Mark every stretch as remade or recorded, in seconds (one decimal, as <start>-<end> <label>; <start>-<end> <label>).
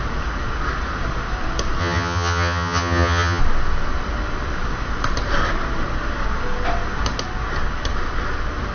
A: 0.0-1.8 recorded; 1.8-3.4 remade; 3.4-8.7 recorded